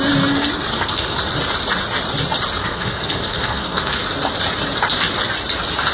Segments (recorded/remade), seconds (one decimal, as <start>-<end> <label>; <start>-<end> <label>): 0.0-0.7 recorded; 0.7-1.2 remade; 1.2-2.6 recorded; 2.6-4.0 remade; 4.0-5.9 recorded